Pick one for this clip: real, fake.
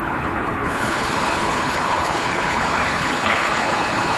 fake